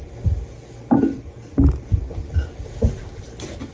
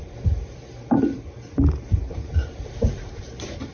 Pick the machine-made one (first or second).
second